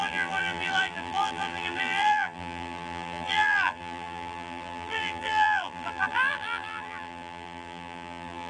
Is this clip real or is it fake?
fake